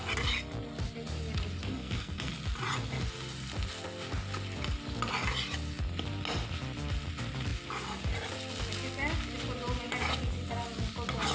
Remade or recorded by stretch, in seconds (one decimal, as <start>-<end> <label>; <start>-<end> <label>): 0.0-1.6 recorded; 1.6-2.3 remade; 2.3-11.3 recorded